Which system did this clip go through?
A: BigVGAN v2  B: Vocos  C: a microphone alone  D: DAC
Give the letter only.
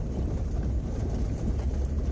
A